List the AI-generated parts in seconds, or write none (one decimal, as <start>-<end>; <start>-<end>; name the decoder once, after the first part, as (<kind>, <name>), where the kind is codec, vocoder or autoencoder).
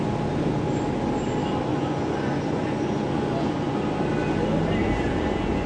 1.7-3.8 (vocoder, Vocos); 4.8-5.7